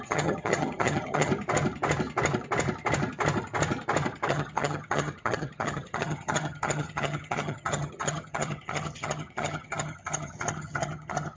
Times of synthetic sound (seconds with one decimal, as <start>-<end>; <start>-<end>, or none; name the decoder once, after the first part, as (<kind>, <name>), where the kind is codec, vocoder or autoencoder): 0.0-1.3 (vocoder, HiFi-GAN); 4.3-11.4